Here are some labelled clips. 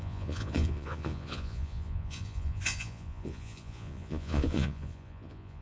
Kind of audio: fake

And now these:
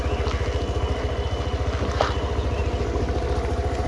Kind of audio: real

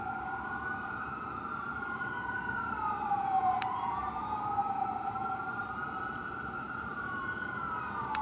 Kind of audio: fake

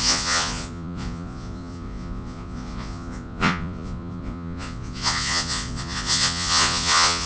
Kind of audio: fake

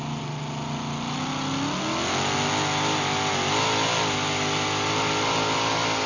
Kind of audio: real